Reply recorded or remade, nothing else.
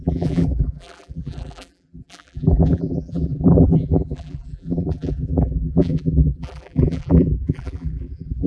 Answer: remade